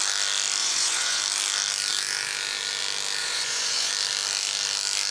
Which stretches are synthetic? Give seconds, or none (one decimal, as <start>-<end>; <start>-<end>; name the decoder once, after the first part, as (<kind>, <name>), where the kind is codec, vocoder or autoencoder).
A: 0.6-1.2 (vocoder, Vocos); 3.2-3.9